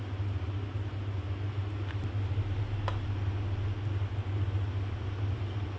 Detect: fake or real real